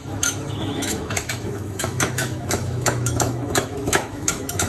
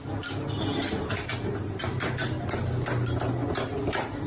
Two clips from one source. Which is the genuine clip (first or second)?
second